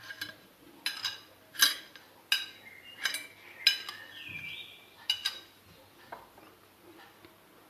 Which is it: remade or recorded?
recorded